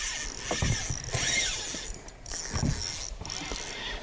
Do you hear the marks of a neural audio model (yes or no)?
no